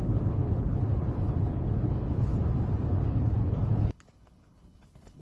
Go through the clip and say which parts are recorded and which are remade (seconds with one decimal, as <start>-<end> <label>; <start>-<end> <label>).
0.0-2.3 remade; 2.3-2.9 recorded; 2.9-5.2 remade